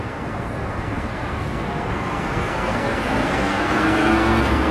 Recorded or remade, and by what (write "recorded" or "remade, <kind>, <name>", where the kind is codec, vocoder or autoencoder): remade, codec, SNAC